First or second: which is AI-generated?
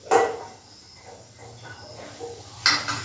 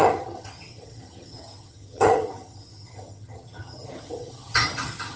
second